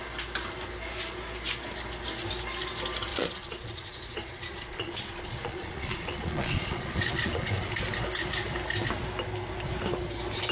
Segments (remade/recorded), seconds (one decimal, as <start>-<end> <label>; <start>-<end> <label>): 0.0-3.1 recorded; 3.1-7.7 remade; 7.7-10.5 recorded